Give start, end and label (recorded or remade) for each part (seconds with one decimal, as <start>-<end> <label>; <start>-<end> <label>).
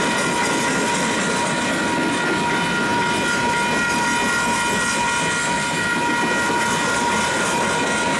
0.0-8.2 recorded